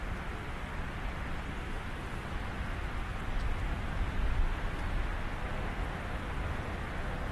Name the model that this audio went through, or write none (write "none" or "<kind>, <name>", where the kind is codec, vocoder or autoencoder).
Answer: none